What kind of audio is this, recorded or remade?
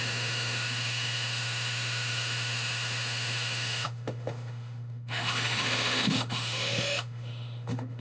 remade